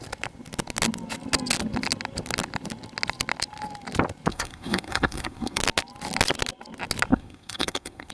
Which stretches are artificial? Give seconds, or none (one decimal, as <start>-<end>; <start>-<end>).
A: 4.3-5.6; 7.1-8.1